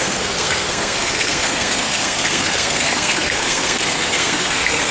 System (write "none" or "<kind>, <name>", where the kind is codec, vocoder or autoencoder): codec, SNAC